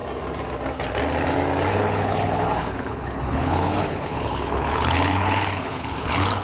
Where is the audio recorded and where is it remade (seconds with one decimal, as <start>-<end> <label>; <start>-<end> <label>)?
0.0-1.7 recorded; 1.7-6.4 remade